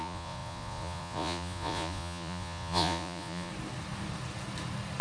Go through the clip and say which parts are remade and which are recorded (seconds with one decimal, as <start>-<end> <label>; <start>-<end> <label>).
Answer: 0.0-3.5 remade; 3.5-5.0 recorded

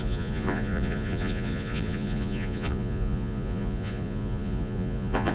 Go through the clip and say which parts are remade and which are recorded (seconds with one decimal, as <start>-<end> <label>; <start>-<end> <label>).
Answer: 0.0-5.3 remade

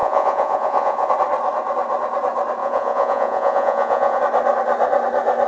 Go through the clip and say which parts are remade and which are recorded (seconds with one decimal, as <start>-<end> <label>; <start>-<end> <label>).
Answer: 0.0-1.1 remade; 1.1-2.6 recorded; 2.6-4.2 remade; 4.2-5.5 recorded

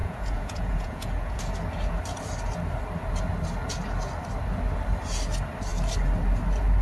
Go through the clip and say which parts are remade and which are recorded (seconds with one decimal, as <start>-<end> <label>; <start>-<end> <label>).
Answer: 0.0-1.4 remade; 1.4-6.8 recorded